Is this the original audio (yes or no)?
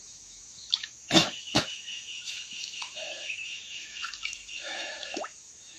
no